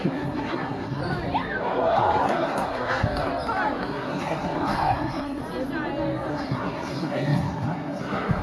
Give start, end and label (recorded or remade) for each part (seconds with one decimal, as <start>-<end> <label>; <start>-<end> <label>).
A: 0.0-1.0 remade; 1.0-1.6 recorded; 1.6-3.3 remade; 3.3-3.8 recorded; 3.8-5.4 remade; 5.4-6.3 recorded; 6.3-8.4 remade